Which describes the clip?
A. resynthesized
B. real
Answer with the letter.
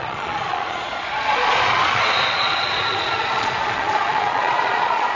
A